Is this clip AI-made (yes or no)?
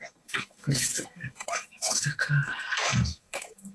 yes